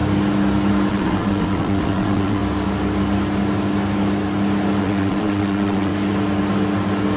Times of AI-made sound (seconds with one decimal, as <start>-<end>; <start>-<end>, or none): 0.9-2.4; 4.8-5.9